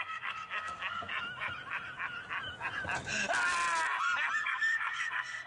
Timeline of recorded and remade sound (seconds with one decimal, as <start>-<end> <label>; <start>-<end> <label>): 0.0-1.1 remade; 1.1-4.4 recorded; 4.4-5.5 remade